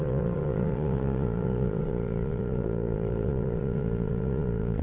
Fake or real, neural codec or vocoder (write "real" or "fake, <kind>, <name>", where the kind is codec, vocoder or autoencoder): fake, vocoder, Vocos